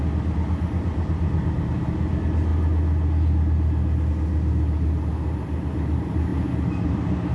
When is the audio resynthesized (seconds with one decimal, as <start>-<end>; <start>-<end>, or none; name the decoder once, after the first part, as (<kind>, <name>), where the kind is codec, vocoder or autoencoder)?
none